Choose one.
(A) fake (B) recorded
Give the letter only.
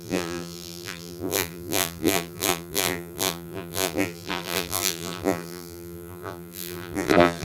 A